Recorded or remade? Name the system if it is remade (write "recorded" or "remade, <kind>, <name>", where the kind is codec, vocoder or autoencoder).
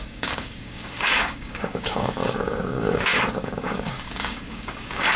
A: remade, codec, DAC